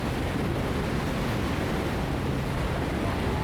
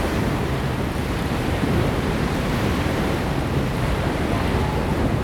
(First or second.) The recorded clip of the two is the first